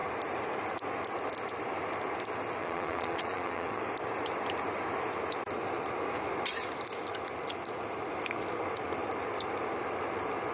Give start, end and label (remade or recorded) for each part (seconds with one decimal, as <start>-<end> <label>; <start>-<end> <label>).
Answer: 0.0-2.6 recorded; 2.6-3.8 remade; 3.8-10.5 recorded